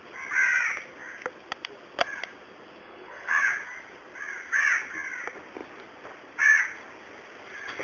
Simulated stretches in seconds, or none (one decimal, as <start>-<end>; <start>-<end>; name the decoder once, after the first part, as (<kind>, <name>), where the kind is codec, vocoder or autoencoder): 2.8-3.4 (codec, HILCodec)